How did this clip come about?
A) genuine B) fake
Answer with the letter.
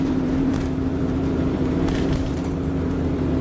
B